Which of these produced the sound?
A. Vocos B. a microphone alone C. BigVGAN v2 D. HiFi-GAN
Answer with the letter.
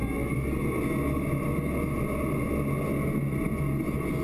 B